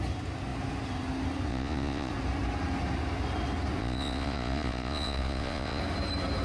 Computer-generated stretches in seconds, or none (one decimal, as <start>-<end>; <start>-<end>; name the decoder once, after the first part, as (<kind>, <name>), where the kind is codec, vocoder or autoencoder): 1.5-2.1 (vocoder, Vocos); 3.8-5.8